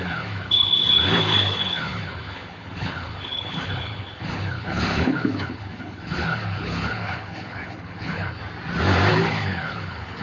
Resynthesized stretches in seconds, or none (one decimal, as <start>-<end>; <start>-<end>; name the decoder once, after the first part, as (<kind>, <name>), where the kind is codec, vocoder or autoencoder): 0.0-8.4 (codec, HILCodec); 9.1-10.2